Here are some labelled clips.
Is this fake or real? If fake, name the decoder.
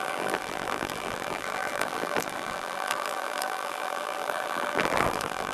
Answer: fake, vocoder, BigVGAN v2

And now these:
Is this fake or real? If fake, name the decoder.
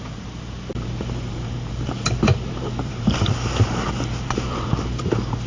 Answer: fake, vocoder, BigVGAN v2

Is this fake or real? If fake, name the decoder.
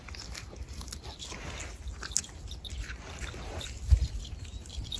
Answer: real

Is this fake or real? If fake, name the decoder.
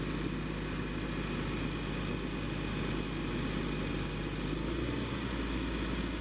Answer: real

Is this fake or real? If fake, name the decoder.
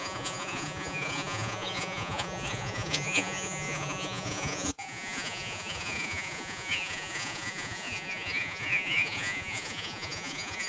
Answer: fake, vocoder, Vocos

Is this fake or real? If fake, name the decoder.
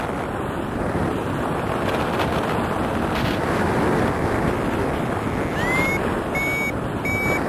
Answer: real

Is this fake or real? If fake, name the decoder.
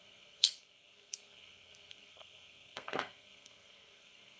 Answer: fake, codec, SNAC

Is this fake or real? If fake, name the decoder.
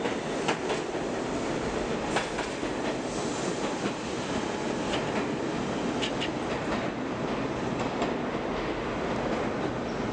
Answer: real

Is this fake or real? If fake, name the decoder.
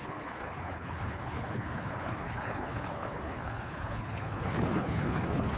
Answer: fake, codec, HILCodec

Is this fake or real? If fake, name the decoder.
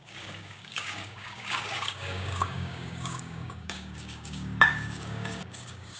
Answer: fake, codec, DAC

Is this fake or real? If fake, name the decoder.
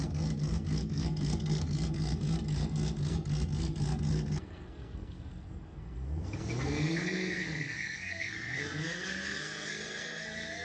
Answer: fake, codec, SNAC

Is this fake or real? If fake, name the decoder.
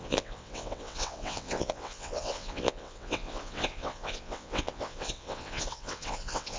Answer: fake, vocoder, WaveNeXt